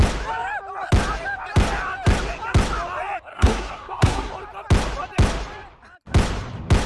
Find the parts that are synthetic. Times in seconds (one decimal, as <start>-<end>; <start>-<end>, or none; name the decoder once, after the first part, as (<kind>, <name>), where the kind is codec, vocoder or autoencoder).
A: 3.3-4.3 (codec, SNAC)